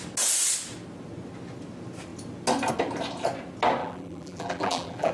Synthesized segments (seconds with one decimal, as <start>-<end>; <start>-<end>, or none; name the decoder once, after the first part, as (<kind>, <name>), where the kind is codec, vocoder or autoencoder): 3.8-5.1 (vocoder, BigVGAN v2)